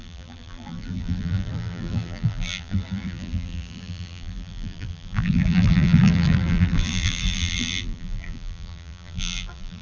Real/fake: fake